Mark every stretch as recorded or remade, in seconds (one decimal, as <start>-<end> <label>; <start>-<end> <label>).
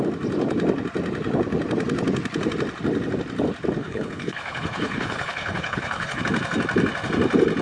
0.0-3.8 recorded; 3.8-6.2 remade; 6.2-7.6 recorded